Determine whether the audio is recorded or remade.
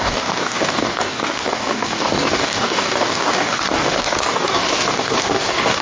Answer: remade